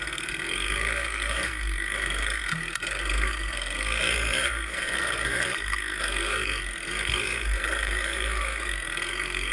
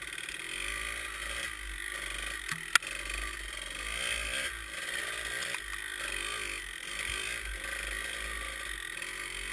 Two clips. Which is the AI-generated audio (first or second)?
first